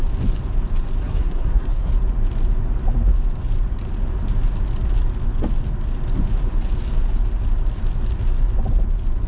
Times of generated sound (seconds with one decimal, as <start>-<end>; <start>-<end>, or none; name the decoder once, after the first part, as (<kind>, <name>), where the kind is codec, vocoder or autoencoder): 1.0-1.9 (codec, SNAC)